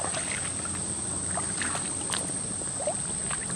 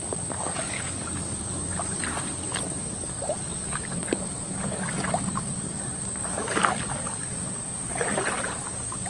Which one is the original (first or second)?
first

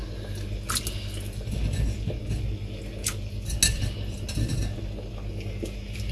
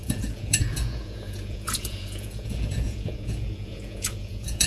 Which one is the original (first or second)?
first